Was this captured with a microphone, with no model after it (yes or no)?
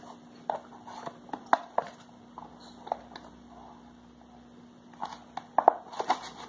yes